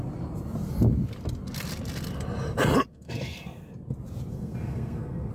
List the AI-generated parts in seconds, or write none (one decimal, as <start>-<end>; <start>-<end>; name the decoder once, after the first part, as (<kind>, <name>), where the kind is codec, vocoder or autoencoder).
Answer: 2.9-3.7 (codec, SNAC); 4.3-5.3

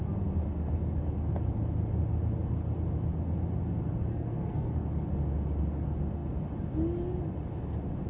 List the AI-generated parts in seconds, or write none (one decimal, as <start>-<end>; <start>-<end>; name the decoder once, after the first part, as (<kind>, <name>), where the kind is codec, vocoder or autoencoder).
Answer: 4.1-4.7 (codec, SNAC)

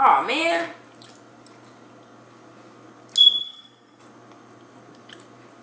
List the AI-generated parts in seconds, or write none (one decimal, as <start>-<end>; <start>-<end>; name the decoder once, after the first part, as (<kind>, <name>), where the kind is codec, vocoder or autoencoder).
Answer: 3.4-4.0 (codec, SNAC)

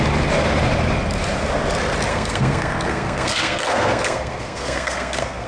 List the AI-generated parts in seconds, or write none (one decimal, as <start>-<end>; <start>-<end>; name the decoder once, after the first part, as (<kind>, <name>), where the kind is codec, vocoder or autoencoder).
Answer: 2.1-5.5 (codec, SNAC)

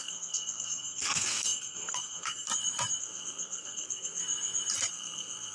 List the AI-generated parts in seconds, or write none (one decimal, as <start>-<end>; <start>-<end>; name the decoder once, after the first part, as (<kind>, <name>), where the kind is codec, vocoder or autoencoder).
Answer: 0.0-2.5 (codec, SNAC); 3.0-4.2; 4.9-5.5

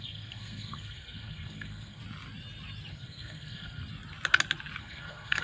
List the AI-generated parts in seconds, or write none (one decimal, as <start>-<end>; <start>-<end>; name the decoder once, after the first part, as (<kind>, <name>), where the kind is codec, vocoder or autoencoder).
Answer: 0.0-2.0 (codec, SNAC); 2.9-3.8; 4.8-5.4

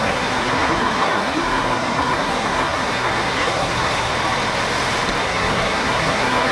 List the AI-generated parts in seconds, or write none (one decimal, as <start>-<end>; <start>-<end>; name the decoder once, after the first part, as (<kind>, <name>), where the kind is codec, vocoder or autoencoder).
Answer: 0.0-4.1 (codec, SNAC); 5.2-6.5

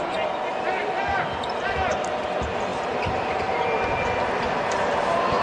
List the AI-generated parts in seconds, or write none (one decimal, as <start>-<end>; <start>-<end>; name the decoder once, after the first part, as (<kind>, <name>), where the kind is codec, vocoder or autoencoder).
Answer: none